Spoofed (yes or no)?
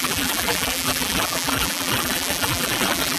yes